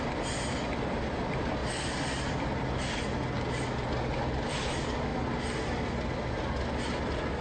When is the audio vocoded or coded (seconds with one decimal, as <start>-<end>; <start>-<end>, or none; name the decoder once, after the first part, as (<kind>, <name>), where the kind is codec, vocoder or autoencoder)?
none